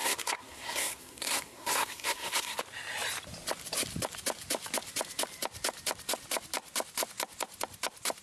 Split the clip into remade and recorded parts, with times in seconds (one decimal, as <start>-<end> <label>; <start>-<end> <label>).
0.0-2.6 remade; 2.6-8.2 recorded